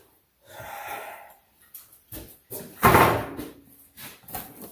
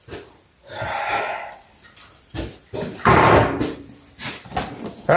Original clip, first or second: first